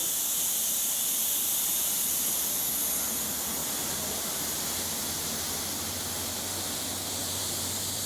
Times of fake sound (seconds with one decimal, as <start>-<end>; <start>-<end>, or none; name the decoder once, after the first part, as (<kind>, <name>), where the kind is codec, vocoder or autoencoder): 1.8-2.4 (vocoder, BigVGAN v2); 7.2-8.1